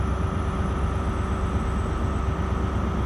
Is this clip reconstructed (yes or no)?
no